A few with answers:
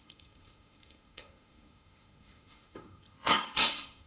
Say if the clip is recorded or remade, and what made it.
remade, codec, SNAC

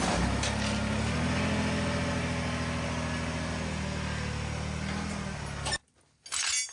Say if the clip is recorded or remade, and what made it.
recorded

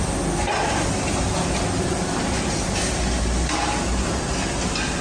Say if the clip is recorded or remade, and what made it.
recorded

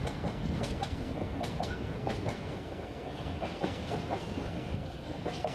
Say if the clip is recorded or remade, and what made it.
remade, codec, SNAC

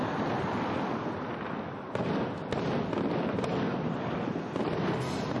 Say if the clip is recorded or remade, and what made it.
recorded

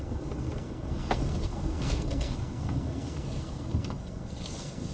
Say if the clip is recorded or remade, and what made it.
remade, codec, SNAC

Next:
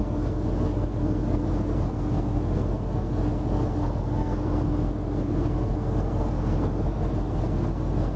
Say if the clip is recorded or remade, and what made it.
remade, codec, SNAC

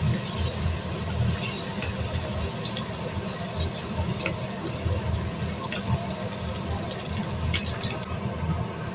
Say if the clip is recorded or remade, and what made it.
recorded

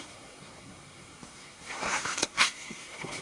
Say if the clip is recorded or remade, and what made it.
remade, codec, SNAC